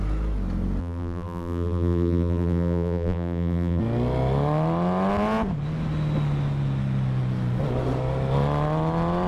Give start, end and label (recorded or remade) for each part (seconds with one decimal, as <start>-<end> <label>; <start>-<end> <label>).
0.0-0.8 recorded; 0.8-3.8 remade; 3.8-9.3 recorded